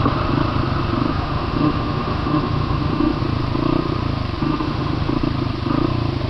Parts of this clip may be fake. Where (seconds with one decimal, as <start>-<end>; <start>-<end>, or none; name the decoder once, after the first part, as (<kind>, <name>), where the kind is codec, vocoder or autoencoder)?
1.1-3.2 (autoencoder, DAC-VAE); 4.4-5.1